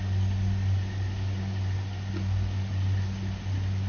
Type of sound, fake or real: real